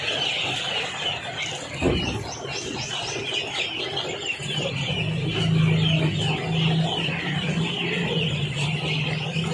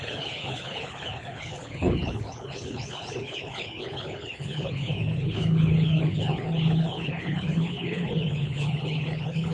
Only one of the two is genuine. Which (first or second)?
first